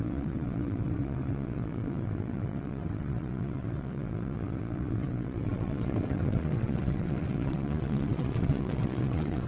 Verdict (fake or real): fake